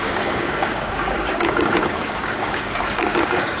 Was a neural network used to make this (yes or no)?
yes